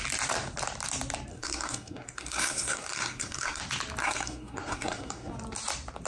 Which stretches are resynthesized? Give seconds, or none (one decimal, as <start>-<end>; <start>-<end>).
1.3-3.6; 4.0-5.3